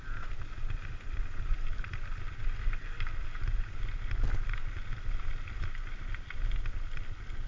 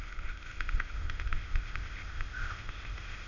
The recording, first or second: first